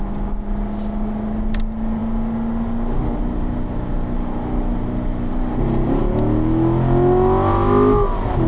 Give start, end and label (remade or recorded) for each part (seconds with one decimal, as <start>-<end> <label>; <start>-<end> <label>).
0.0-8.5 recorded